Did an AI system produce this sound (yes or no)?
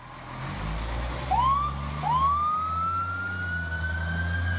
no